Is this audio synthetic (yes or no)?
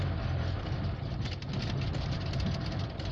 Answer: no